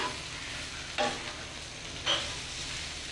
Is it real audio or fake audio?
real